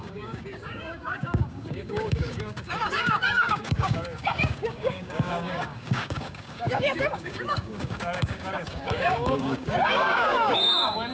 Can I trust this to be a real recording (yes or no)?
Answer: no